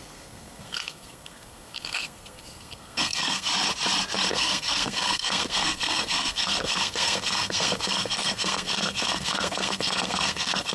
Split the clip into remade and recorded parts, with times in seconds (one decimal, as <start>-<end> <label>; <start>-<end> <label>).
0.0-3.5 remade; 3.5-4.3 recorded; 4.3-10.7 remade